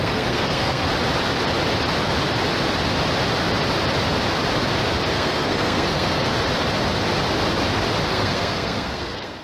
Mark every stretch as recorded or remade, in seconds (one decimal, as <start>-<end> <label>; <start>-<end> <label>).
0.0-0.9 remade; 0.9-5.1 recorded; 5.1-6.3 remade; 6.3-8.1 recorded; 8.1-9.4 remade